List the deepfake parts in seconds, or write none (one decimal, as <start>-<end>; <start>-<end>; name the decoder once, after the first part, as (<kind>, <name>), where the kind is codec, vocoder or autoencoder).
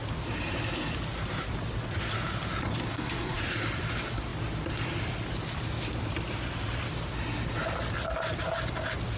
2.9-3.4 (codec, SNAC)